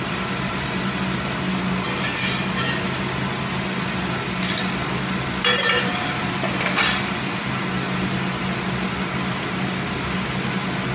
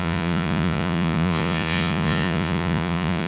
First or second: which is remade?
second